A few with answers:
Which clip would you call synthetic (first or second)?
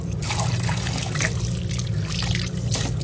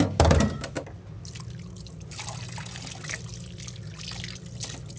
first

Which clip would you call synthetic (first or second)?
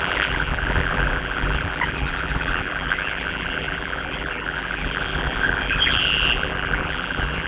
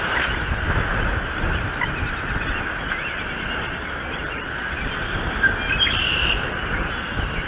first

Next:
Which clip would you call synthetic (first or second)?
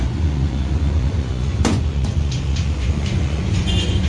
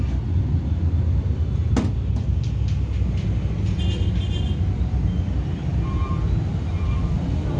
first